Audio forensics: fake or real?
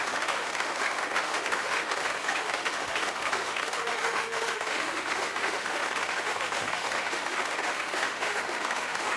fake